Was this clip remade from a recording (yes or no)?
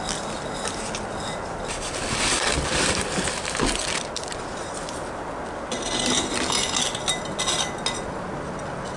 no